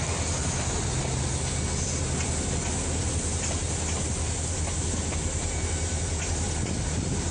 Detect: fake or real real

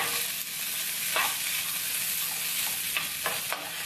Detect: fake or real real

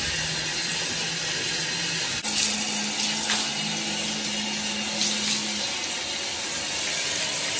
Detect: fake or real real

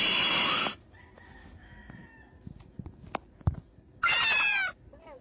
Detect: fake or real real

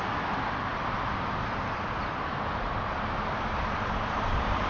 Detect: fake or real real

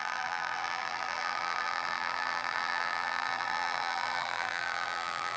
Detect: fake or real fake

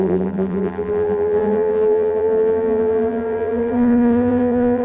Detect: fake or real fake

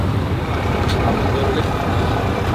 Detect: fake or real real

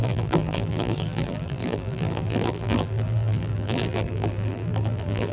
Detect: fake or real fake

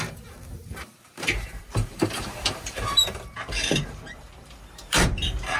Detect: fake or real fake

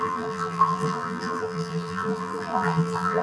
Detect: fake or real fake